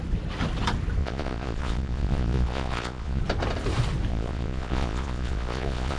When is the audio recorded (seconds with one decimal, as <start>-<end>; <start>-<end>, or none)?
0.0-1.0; 3.2-4.1